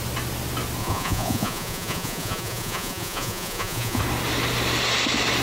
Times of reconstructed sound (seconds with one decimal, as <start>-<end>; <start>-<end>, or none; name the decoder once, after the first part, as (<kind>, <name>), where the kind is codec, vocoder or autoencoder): 0.8-4.0 (vocoder, Vocos)